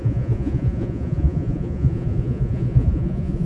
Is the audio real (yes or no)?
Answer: no